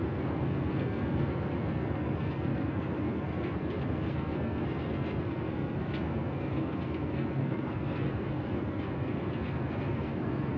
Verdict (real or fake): fake